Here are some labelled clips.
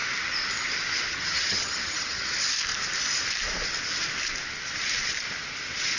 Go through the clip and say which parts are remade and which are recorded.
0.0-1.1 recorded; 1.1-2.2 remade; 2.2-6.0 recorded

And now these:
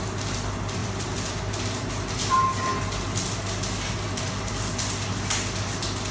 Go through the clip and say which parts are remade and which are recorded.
0.0-0.8 recorded; 0.8-1.4 remade; 1.4-6.1 recorded